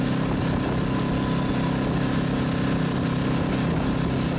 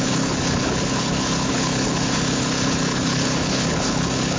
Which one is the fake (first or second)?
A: second